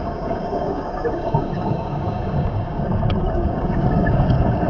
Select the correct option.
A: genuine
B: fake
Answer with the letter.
B